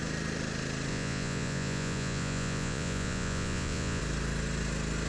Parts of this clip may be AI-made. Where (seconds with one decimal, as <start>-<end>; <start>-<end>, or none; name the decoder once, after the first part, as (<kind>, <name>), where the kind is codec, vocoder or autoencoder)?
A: 0.9-4.0 (vocoder, Vocos)